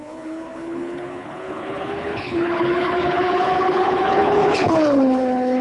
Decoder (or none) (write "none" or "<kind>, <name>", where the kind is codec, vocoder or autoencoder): codec, HILCodec